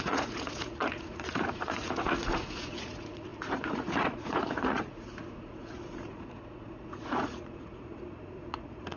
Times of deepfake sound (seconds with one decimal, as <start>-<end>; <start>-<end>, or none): 0.0-9.0